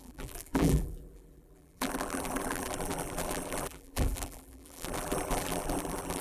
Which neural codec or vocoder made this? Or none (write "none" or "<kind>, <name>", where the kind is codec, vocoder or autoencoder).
vocoder, BigVGAN v2